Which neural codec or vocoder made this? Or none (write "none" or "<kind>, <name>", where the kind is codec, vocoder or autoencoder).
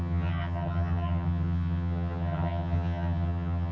vocoder, HiFi-GAN